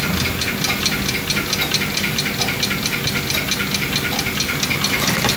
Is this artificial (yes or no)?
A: no